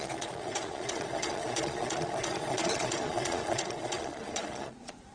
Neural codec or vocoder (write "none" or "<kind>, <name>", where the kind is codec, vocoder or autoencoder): vocoder, Vocos